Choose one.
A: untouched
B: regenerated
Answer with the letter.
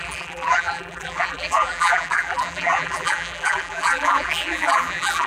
B